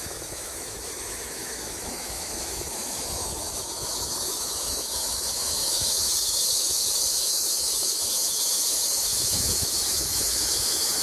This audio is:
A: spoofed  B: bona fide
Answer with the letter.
A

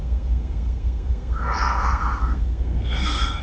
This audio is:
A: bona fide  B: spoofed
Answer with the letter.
B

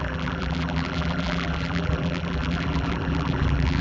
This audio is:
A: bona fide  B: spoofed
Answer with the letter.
B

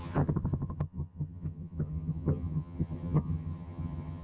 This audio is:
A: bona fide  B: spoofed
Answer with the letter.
B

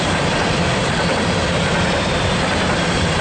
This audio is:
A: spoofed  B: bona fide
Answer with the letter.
A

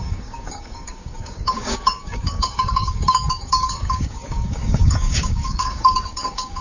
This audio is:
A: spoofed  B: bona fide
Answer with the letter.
A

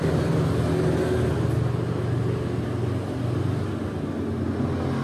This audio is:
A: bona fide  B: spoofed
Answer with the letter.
A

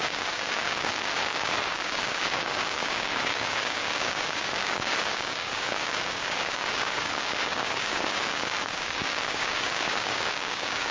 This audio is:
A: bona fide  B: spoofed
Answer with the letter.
B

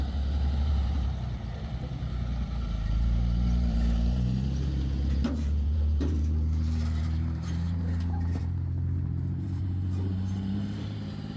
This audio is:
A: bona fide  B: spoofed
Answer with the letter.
B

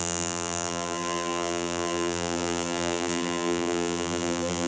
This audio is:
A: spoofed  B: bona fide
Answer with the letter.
A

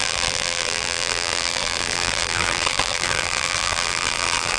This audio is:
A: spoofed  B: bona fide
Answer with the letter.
A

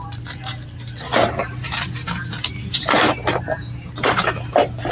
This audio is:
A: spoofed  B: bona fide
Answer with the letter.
A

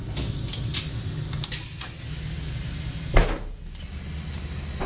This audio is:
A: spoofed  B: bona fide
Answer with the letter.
B